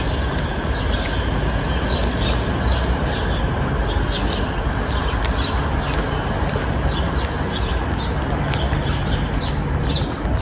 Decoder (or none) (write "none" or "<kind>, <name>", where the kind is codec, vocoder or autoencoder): none